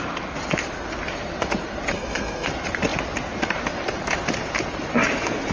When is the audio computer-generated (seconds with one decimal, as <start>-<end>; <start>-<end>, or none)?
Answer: 1.9-2.5